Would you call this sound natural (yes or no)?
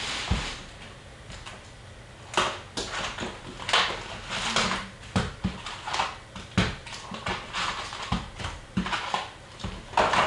yes